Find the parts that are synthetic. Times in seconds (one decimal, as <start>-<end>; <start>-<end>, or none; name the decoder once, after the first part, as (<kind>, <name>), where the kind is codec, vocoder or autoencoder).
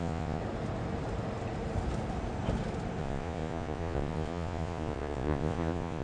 0.0-0.4 (vocoder, Vocos); 3.0-6.0